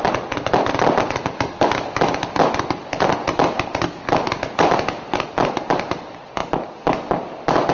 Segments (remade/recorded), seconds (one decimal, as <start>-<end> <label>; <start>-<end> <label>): 0.0-7.7 recorded